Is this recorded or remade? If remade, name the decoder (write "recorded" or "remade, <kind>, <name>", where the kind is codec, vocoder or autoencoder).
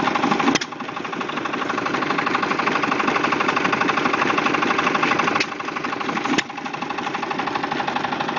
recorded